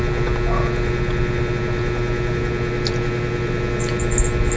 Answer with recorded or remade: recorded